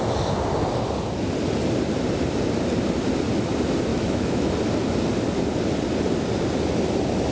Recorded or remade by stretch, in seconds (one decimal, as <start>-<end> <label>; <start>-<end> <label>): 0.0-3.9 recorded; 3.9-4.5 remade; 4.5-7.3 recorded